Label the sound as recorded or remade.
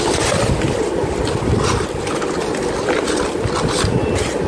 recorded